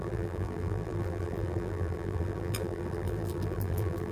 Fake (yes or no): yes